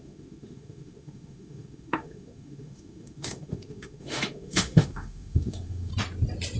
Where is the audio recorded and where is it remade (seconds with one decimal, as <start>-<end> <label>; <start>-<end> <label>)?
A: 0.0-5.9 remade; 5.9-6.6 recorded

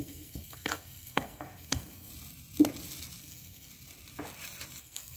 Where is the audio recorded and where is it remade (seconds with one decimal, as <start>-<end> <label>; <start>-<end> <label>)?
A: 0.0-2.1 remade; 2.1-3.2 recorded; 3.2-3.7 remade; 3.7-4.8 recorded; 4.8-5.2 remade

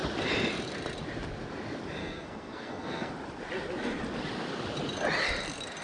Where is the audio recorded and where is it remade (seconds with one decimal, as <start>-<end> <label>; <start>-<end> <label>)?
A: 0.0-2.0 recorded; 2.0-3.1 remade; 3.1-5.8 recorded

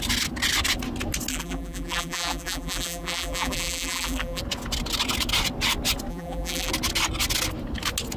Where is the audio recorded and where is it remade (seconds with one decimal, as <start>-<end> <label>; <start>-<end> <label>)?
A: 0.0-1.3 recorded; 1.3-4.4 remade; 4.4-6.1 recorded; 6.1-6.7 remade; 6.7-8.2 recorded

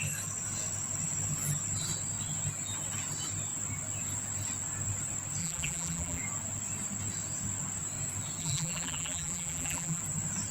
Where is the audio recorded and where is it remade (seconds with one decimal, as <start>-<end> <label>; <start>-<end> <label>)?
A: 0.0-5.4 recorded; 5.4-6.2 remade; 6.2-8.4 recorded; 8.4-10.0 remade; 10.0-10.5 recorded